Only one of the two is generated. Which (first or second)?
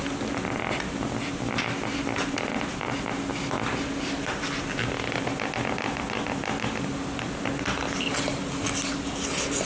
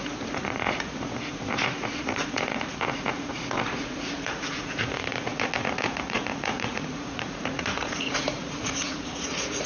second